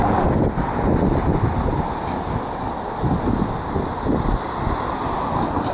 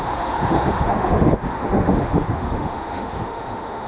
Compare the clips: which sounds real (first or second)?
first